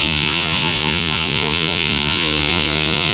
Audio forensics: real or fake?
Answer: fake